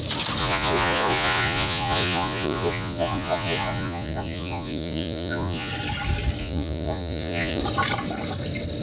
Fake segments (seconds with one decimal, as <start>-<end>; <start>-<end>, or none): 0.4-5.7; 6.4-7.6